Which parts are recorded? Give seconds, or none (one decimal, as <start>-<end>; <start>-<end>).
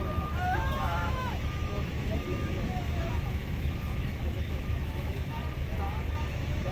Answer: 5.4-6.3